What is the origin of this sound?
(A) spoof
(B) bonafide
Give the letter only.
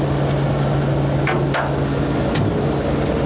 B